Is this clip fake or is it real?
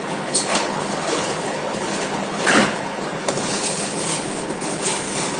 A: fake